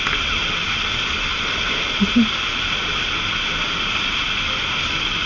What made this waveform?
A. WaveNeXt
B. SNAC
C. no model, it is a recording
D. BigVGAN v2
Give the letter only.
C